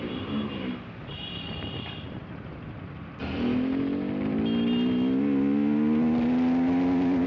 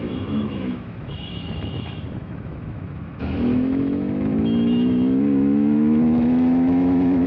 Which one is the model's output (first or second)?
second